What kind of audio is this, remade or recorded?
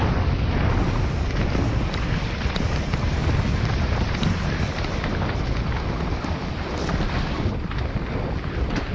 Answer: recorded